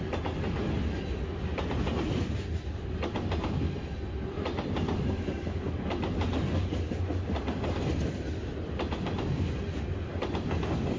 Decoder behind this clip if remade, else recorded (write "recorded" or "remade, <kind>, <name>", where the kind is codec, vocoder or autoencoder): recorded